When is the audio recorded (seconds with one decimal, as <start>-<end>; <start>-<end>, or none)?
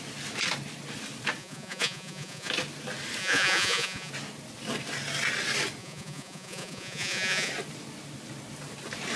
0.0-1.4; 2.5-3.2; 4.1-5.8; 7.5-9.2